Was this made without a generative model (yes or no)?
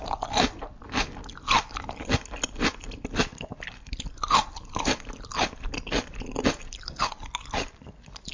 yes